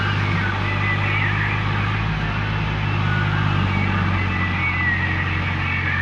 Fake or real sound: real